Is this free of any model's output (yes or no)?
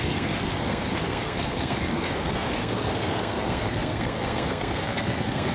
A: no